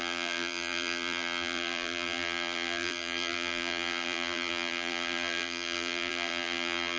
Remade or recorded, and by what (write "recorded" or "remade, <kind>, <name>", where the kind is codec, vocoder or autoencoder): remade, vocoder, BigVGAN v2